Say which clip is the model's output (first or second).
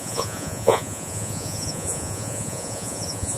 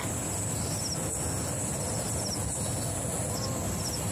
first